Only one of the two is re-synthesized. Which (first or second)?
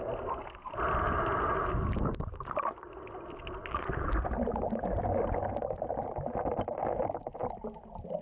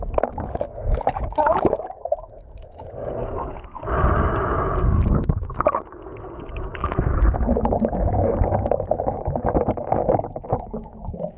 second